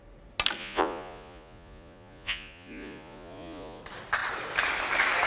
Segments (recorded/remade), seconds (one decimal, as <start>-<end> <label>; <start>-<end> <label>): 0.0-0.6 recorded; 0.6-3.8 remade; 3.8-5.3 recorded